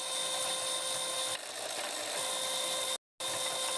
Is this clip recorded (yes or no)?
yes